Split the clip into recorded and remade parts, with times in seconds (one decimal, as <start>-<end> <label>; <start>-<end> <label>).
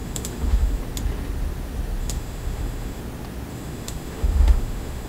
0.0-0.8 remade; 0.8-2.0 recorded; 2.0-3.0 remade; 3.0-3.5 recorded; 3.5-5.1 remade